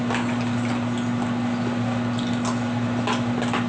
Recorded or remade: recorded